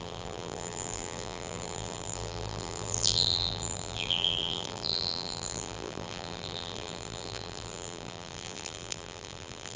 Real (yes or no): no